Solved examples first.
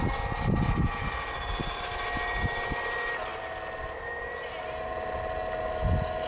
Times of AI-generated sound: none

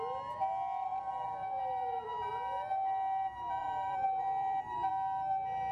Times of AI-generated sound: 0.9-2.3 (vocoder, BigVGAN v2); 3.6-4.9

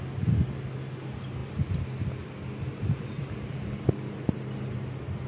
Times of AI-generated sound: none